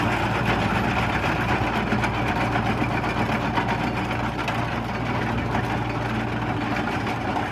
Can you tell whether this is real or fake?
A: real